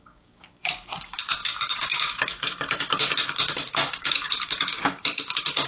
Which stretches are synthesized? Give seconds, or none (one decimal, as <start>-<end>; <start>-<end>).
0.0-5.7